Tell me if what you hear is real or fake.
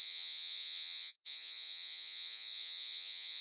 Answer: fake